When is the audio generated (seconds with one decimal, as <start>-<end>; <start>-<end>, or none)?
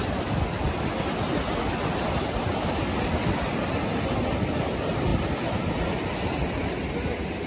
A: 5.1-5.7